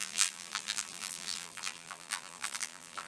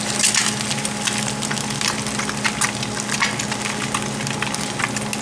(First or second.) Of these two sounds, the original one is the second